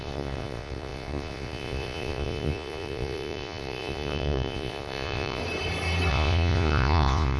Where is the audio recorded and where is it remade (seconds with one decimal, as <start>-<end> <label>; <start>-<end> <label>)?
0.0-5.4 remade; 5.4-6.1 recorded; 6.1-7.4 remade